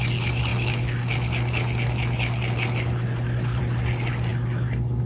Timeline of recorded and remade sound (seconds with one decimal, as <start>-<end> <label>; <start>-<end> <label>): 0.0-5.1 recorded